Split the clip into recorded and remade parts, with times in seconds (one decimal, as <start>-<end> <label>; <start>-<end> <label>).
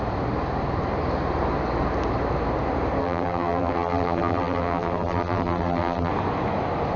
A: 0.0-3.0 recorded; 3.0-6.1 remade; 6.1-7.0 recorded